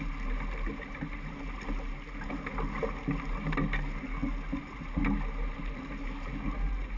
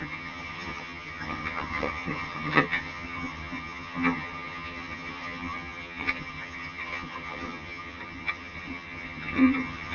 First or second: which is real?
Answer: first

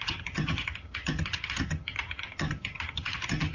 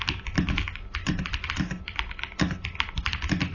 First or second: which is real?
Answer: second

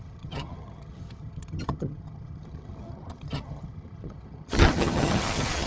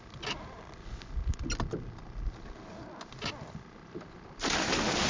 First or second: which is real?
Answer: second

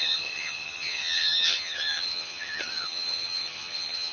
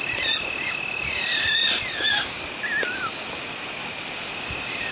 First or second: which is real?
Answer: second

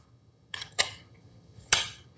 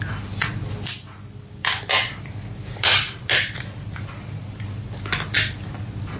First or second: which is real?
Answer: second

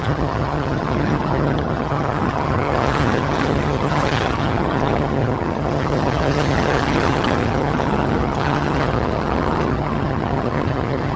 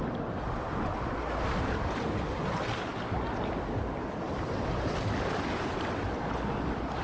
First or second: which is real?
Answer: second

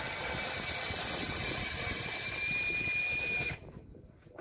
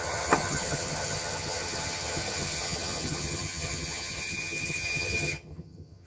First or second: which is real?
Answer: first